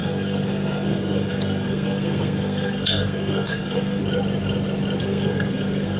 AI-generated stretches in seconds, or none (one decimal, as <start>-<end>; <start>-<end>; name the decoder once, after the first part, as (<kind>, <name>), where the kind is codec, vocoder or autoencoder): 0.0-4.0 (codec, SNAC); 5.0-6.0